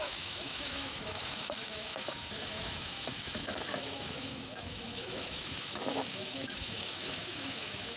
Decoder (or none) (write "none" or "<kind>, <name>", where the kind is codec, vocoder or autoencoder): autoencoder, DAC-VAE